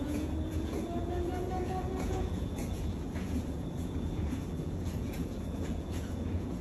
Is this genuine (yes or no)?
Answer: no